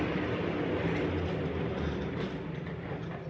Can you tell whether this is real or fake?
real